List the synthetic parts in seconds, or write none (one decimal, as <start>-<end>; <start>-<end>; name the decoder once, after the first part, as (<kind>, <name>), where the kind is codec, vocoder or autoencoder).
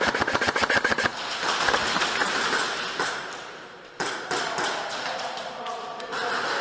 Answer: none